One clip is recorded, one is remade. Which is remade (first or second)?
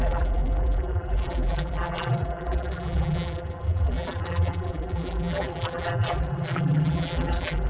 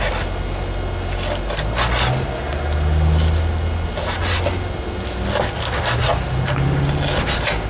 first